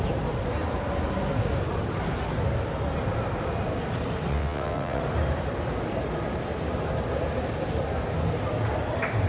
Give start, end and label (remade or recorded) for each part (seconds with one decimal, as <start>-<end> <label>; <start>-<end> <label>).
0.0-4.3 recorded; 4.3-5.0 remade; 5.0-9.3 recorded